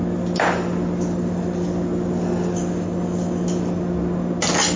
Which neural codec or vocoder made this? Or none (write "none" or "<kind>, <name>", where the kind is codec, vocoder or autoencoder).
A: none